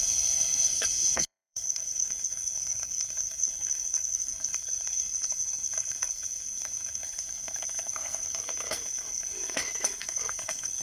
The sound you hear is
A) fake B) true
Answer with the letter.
A